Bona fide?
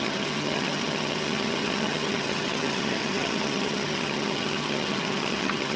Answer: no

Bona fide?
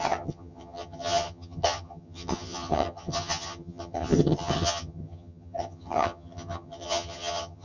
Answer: no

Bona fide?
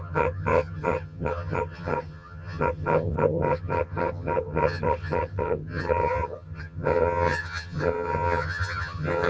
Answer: no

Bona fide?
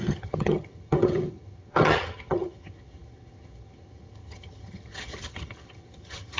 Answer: no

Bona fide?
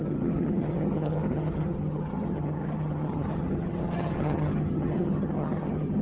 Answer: no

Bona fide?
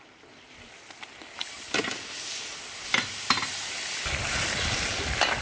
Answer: yes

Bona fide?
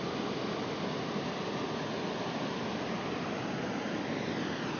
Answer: yes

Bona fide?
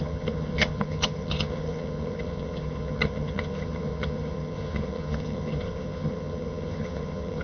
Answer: no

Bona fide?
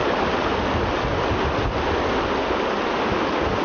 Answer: yes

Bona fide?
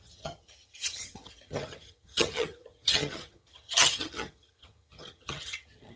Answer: no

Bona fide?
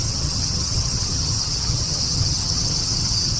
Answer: no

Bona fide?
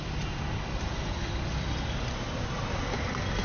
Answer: yes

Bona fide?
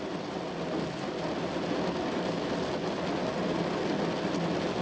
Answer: yes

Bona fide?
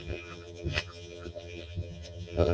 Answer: no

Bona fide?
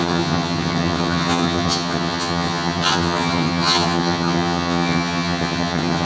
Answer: no